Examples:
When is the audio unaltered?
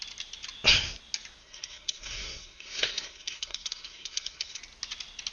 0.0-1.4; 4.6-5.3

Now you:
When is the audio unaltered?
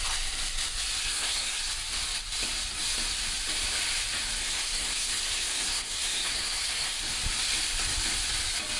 0.0-1.0; 1.7-4.4; 7.0-8.8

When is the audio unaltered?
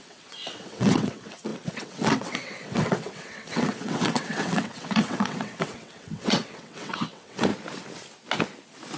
7.5-9.0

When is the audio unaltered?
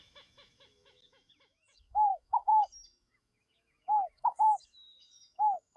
none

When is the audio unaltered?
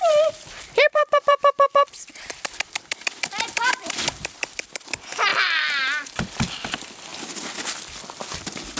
7.1-7.6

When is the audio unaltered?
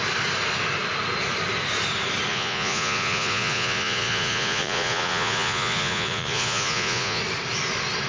0.0-2.3; 7.2-8.1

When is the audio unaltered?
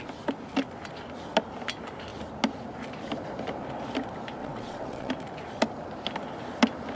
0.0-4.4; 5.1-6.9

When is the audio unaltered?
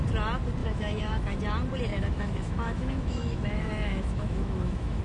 0.0-0.6; 1.4-1.9